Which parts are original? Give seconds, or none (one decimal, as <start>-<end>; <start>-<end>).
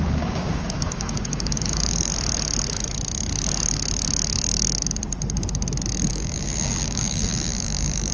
2.1-6.1